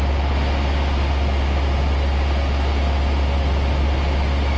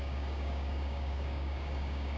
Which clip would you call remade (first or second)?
second